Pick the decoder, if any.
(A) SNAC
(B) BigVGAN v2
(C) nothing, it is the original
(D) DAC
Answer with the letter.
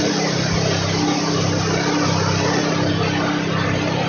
C